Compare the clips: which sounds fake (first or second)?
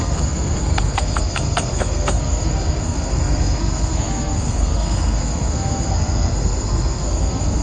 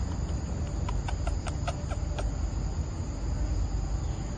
first